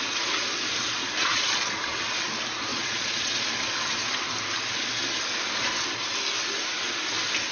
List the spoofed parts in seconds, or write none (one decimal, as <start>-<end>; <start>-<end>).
1.2-1.8; 2.7-3.3